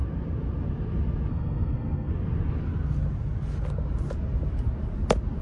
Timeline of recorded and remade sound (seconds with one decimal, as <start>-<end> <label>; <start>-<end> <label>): 0.0-1.3 recorded; 1.3-2.1 remade; 2.1-5.4 recorded